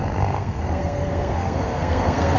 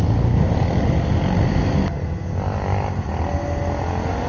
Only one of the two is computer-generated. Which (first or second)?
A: first